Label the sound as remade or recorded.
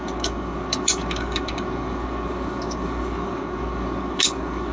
remade